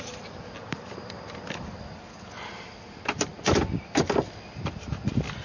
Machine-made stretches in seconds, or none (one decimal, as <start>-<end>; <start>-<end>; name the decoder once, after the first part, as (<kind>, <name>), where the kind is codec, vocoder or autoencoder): none